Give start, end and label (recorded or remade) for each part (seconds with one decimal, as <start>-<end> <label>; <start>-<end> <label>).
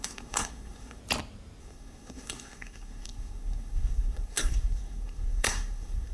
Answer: 0.0-1.0 remade; 1.0-1.6 recorded; 1.6-6.1 remade